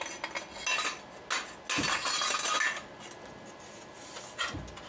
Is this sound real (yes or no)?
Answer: yes